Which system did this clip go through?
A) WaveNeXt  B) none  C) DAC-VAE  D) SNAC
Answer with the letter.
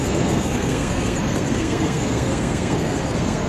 D